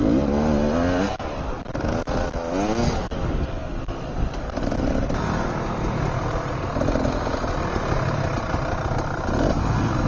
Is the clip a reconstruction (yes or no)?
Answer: no